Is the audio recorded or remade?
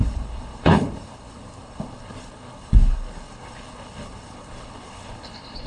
remade